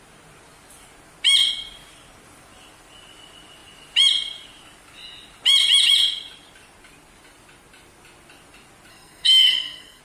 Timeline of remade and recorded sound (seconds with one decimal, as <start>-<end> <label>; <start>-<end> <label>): 0.0-8.9 recorded; 8.9-10.0 remade